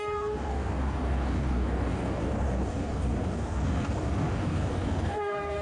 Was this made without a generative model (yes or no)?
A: no